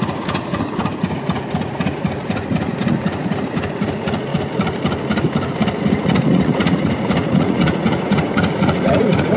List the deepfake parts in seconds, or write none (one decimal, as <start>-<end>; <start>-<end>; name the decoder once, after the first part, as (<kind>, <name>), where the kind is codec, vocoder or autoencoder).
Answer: 0.0-4.3 (vocoder, Vocos); 6.0-9.4